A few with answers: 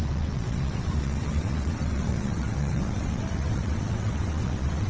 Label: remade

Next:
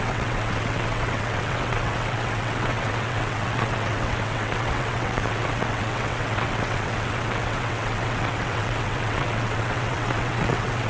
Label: remade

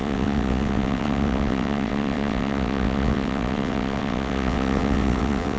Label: remade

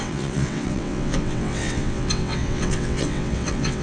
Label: remade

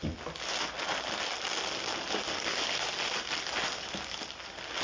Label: recorded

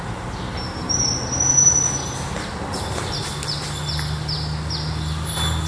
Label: recorded